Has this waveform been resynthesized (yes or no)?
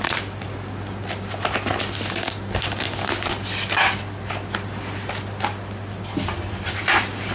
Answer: no